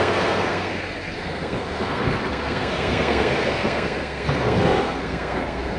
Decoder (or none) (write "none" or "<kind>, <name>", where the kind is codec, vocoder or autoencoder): codec, SNAC